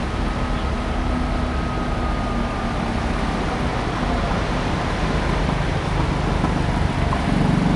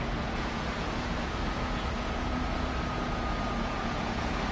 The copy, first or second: second